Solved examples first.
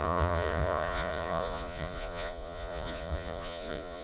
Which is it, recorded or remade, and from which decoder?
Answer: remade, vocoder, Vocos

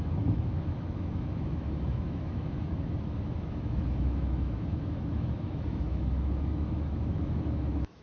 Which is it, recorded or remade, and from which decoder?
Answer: remade, autoencoder, DAC-VAE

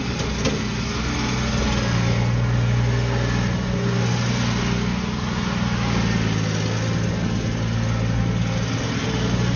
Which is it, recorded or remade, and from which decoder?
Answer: recorded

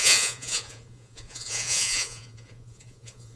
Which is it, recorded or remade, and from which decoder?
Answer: remade, vocoder, Vocos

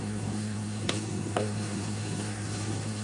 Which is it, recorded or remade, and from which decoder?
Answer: remade, codec, SNAC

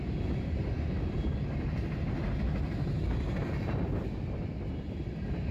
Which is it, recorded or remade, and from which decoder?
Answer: recorded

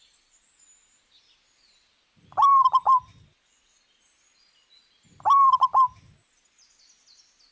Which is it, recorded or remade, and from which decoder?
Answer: recorded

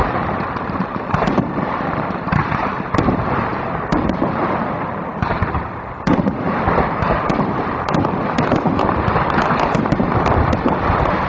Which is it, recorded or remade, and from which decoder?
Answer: remade, vocoder, BigVGAN v2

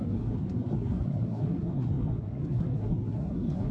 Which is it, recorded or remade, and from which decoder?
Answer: remade, codec, SNAC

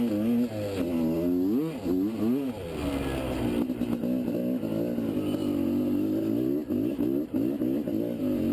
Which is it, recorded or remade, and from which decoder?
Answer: recorded